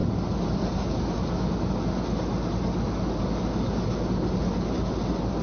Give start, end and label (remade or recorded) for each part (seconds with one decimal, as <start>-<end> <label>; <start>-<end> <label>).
0.0-5.4 recorded